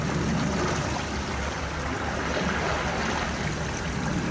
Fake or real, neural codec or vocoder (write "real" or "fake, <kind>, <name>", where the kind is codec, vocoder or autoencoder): real